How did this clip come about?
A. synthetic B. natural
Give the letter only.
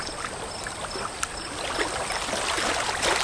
B